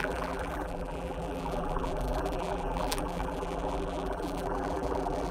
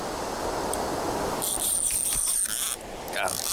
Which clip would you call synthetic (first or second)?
first